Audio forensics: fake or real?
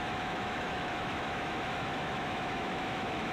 fake